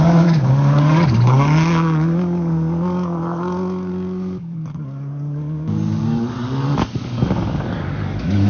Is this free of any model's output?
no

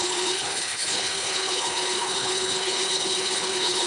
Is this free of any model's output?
no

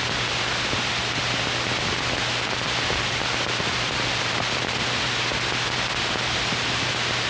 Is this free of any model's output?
yes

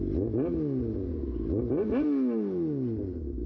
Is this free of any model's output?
yes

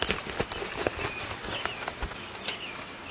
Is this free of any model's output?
yes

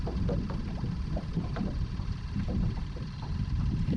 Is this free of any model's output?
no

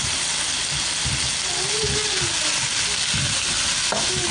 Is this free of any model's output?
yes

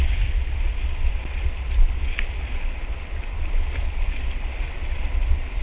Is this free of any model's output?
yes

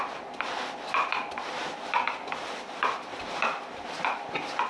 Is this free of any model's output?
yes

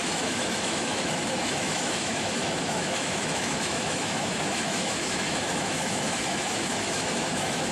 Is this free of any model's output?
no